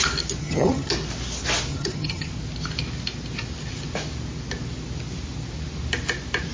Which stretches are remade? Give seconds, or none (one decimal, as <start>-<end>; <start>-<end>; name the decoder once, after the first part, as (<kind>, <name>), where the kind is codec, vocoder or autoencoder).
0.4-0.9 (vocoder, HiFi-GAN); 1.7-2.3